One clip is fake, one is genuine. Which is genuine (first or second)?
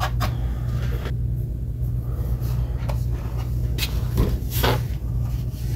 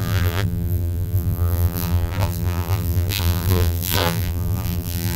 first